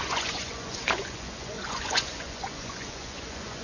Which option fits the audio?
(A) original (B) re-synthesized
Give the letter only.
B